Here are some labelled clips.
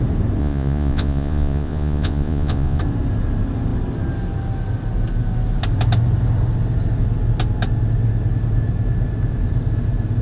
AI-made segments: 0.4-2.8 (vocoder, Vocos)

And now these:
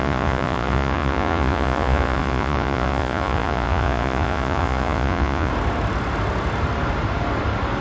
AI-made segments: 0.0-5.5 (vocoder, Vocos)